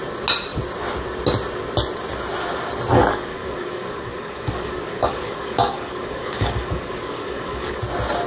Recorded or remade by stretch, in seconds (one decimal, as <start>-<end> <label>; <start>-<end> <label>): 0.0-3.1 recorded; 3.1-7.8 remade; 7.8-8.3 recorded